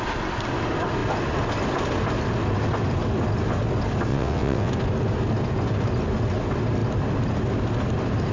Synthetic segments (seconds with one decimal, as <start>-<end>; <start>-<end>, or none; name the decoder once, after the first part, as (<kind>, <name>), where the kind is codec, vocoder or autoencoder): 4.1-4.7 (vocoder, WaveNeXt)

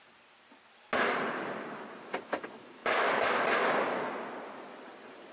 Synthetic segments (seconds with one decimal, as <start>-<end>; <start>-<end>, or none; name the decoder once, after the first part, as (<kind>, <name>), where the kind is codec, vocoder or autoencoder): none

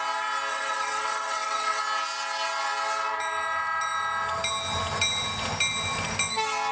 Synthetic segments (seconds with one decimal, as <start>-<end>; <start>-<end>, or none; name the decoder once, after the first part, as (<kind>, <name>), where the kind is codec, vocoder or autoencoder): 0.5-1.8 (vocoder, WaveNeXt)

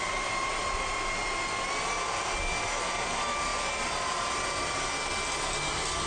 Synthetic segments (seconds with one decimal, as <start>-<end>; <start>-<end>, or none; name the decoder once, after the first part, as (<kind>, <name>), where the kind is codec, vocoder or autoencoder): none